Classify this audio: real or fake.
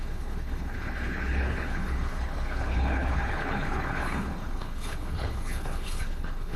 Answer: fake